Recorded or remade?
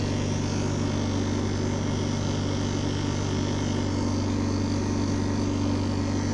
recorded